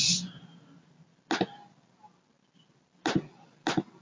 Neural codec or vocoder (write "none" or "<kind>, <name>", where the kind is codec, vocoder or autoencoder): none